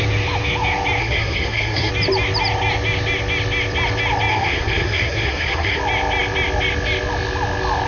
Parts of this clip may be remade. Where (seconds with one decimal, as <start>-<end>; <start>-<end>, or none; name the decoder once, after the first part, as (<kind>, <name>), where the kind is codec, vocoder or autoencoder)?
1.0-1.9 (codec, SNAC); 4.3-5.8